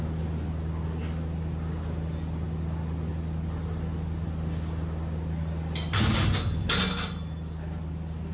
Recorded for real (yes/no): yes